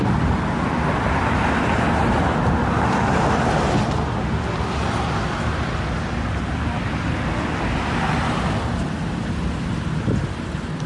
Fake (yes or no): no